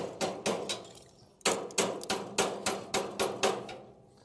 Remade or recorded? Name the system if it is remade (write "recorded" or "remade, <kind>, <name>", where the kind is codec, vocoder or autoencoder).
recorded